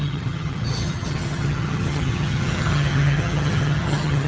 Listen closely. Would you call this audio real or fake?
fake